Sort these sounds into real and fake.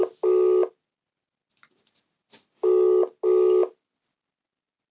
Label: real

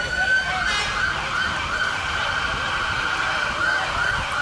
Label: real